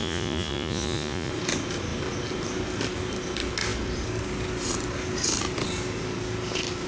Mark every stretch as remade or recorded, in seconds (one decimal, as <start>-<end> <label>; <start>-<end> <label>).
0.0-1.3 remade; 1.3-6.9 recorded